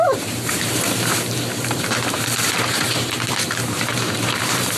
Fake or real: fake